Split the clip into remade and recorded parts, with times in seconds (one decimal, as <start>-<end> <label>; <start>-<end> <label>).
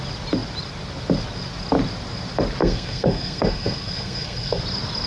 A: 0.0-2.6 recorded; 2.6-4.6 remade; 4.6-5.1 recorded